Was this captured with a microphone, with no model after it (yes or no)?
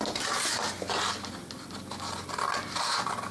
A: yes